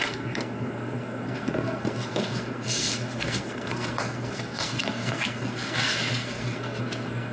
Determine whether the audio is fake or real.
fake